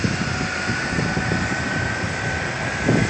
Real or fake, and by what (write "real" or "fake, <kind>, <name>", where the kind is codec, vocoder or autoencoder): real